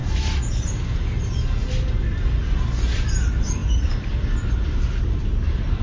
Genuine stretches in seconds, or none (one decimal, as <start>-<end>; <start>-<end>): 0.0-5.8